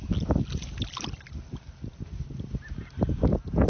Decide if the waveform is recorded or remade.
recorded